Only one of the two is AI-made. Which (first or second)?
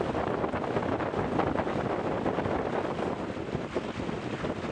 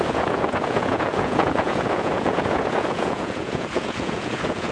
second